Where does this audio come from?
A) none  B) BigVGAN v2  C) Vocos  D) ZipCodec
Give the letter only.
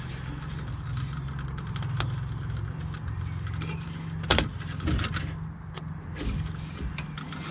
A